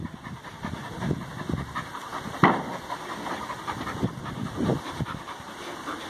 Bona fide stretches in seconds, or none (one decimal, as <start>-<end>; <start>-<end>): 0.0-2.1; 5.3-6.1